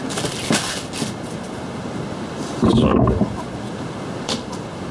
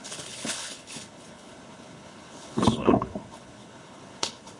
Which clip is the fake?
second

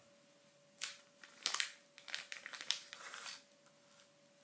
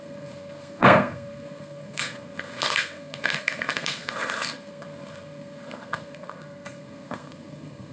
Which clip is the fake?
second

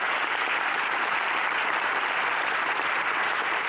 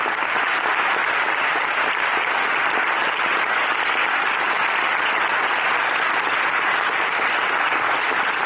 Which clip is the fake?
first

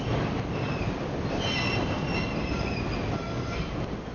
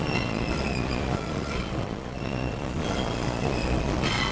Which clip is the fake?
second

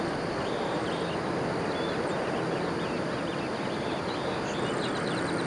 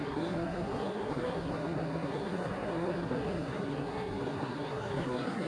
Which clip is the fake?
second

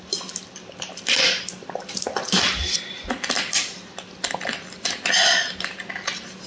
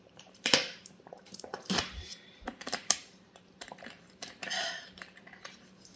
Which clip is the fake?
second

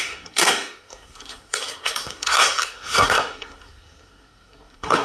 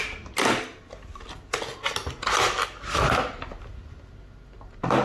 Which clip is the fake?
first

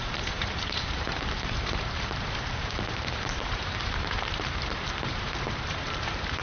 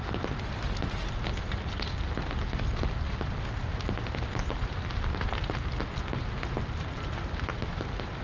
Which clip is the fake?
first